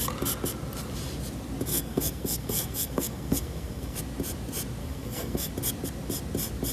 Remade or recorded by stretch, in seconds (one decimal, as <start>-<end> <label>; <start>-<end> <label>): 0.0-1.7 recorded; 1.7-4.0 remade; 4.0-4.8 recorded; 4.8-5.5 remade; 5.5-6.7 recorded